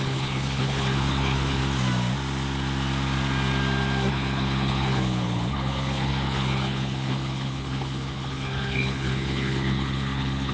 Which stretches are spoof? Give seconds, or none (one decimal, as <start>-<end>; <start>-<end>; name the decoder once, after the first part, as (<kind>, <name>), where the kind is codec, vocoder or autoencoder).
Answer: 0.0-1.6 (codec, HILCodec); 4.1-10.5